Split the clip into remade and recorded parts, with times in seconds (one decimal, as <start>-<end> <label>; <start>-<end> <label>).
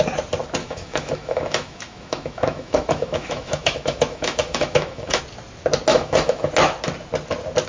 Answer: 0.0-0.6 recorded; 0.6-5.2 remade; 5.2-5.9 recorded; 5.9-6.5 remade; 6.5-7.7 recorded